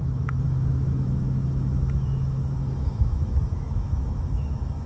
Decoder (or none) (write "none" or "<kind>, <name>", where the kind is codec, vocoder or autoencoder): autoencoder, DAC-VAE